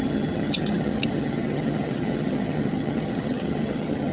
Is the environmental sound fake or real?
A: fake